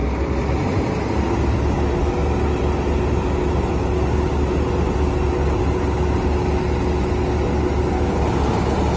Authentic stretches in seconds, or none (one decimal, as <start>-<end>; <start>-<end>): 0.0-9.0